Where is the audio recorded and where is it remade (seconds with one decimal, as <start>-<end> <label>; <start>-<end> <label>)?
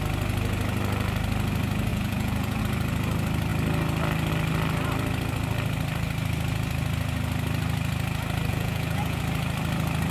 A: 0.0-1.9 recorded; 1.9-2.6 remade; 2.6-8.5 recorded; 8.5-9.2 remade; 9.2-10.1 recorded